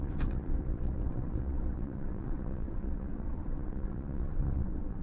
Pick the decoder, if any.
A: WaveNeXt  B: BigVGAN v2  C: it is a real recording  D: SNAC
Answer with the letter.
A